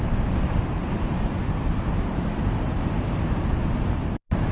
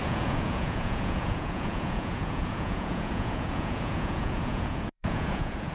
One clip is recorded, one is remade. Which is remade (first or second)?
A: second